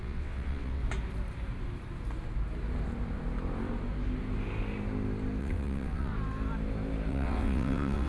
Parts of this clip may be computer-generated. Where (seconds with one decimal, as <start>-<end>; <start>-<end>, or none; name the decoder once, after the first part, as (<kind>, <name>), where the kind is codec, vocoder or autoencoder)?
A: 0.0-0.8 (vocoder, WaveNeXt); 5.4-6.1; 7.1-8.1